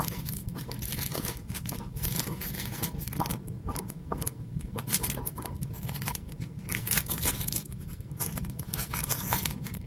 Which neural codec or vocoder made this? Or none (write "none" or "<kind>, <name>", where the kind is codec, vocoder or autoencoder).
codec, SNAC